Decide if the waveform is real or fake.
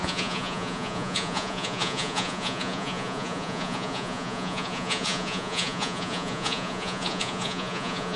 fake